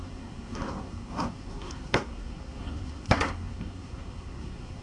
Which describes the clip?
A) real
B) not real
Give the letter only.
B